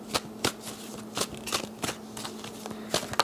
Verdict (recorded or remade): recorded